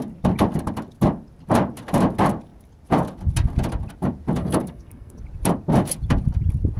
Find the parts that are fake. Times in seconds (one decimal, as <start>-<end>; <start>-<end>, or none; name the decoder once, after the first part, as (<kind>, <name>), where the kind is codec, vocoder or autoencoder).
4.4-5.2 (codec, SNAC)